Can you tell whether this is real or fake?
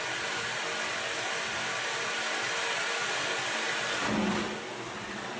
real